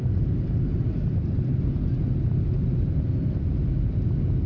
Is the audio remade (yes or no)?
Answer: no